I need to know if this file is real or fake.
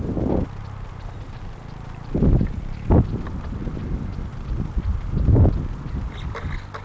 real